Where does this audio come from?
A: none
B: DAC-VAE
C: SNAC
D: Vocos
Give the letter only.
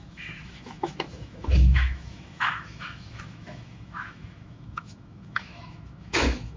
B